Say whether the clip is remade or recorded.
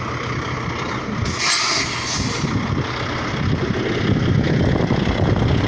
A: recorded